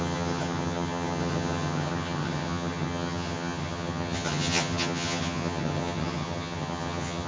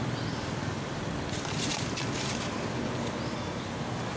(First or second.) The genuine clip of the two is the second